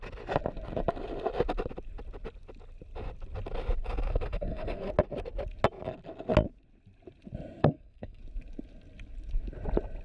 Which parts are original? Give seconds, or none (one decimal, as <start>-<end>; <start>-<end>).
0.0-4.1; 4.9-7.6; 8.2-10.0